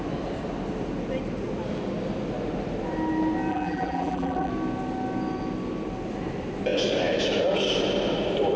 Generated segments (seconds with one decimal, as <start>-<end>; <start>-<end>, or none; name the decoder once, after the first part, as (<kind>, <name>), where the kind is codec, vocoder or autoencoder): 3.5-4.5 (vocoder, BigVGAN v2)